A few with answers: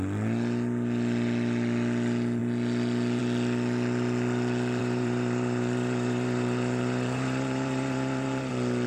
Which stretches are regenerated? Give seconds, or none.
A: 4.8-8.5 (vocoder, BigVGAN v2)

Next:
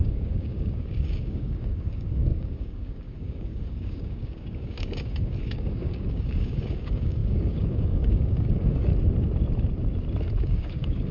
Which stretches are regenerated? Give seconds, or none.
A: 0.0-8.9 (codec, DAC); 10.4-11.1

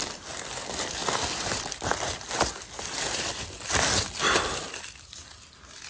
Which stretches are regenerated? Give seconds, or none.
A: none